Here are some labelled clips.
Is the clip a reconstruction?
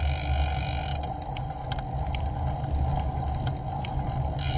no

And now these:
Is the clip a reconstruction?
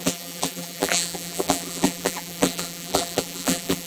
yes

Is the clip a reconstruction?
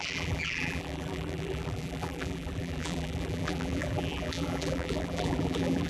yes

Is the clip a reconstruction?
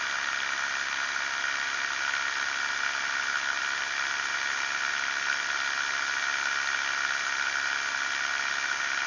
no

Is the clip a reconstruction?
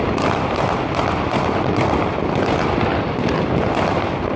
no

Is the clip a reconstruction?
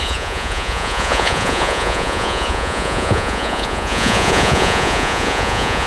yes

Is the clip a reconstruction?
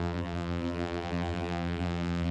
yes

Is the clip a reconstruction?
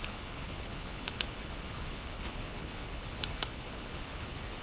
yes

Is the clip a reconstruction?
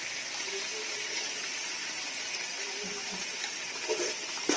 no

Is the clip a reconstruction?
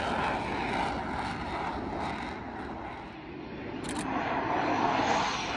no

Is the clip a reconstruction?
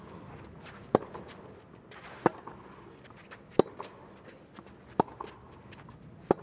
no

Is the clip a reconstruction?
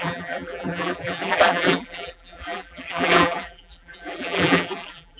yes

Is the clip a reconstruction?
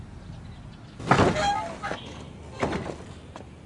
no